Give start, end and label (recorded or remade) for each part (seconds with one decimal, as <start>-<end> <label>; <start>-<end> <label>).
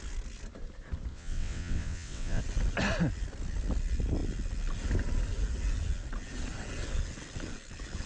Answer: 0.0-1.1 recorded; 1.1-2.4 remade; 2.4-8.1 recorded